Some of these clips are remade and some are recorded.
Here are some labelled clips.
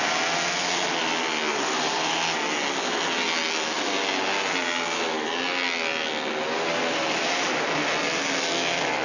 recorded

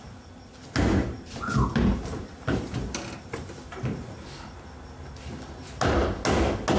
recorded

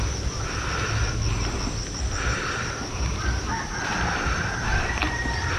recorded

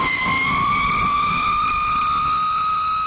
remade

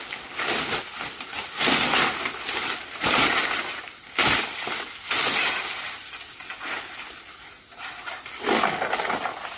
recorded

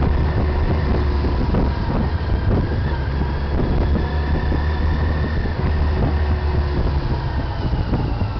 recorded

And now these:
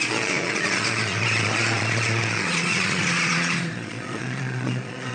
remade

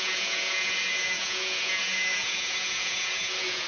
remade